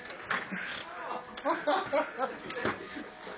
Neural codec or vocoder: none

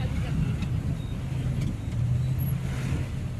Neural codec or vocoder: none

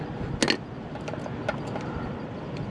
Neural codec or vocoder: none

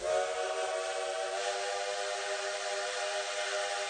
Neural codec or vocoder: none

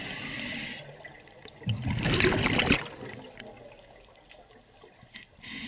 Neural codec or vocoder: none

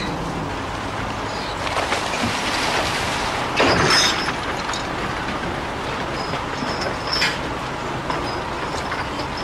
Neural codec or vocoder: none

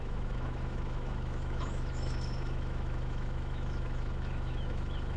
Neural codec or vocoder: autoencoder, DAC-VAE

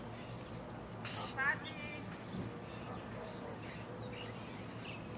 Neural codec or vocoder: none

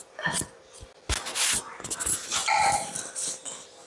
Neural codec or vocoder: none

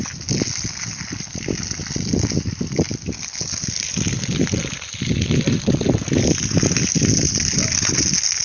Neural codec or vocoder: none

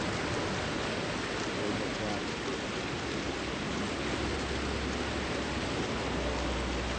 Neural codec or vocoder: none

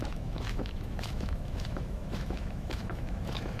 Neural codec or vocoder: autoencoder, DAC-VAE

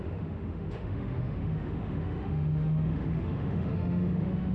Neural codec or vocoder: autoencoder, DAC-VAE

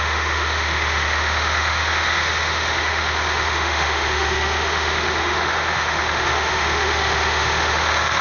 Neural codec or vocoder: autoencoder, DAC-VAE